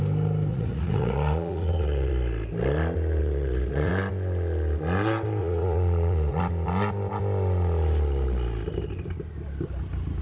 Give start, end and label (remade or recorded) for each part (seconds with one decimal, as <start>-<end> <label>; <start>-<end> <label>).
0.0-0.5 recorded; 0.5-2.1 remade; 2.1-3.2 recorded; 3.2-3.9 remade; 3.9-5.4 recorded; 5.4-6.4 remade; 6.4-10.2 recorded